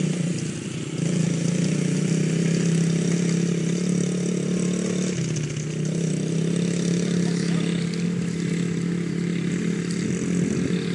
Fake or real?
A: real